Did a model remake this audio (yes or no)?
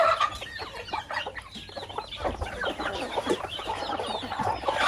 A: no